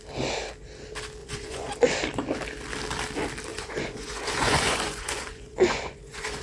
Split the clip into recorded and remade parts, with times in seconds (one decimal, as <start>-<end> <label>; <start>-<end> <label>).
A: 0.0-1.2 recorded; 1.2-1.7 remade; 1.7-3.5 recorded; 3.5-6.4 remade